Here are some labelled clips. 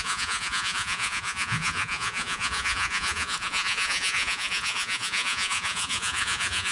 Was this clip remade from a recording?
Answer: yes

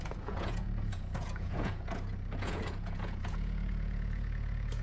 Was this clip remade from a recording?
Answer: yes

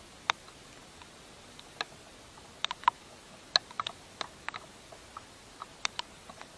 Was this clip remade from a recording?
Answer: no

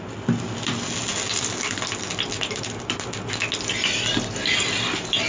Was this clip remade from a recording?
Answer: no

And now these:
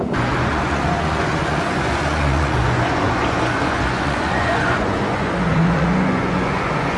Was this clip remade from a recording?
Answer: yes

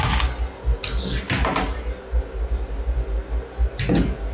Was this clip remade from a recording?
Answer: no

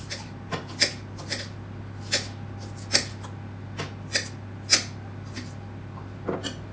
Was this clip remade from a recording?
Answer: no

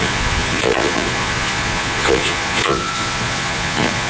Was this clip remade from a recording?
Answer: yes